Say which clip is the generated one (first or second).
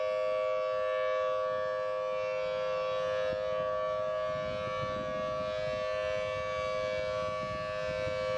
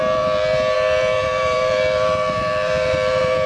second